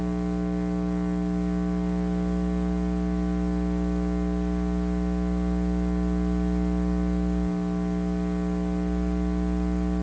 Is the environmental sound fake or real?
real